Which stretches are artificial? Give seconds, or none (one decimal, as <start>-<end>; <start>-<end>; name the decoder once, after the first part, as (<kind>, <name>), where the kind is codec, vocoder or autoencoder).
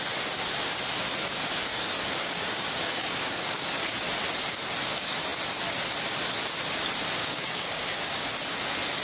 1.7-3.8 (codec, DAC); 7.2-8.3